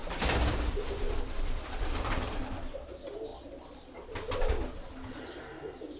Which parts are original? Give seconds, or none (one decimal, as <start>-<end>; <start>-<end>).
2.4-6.0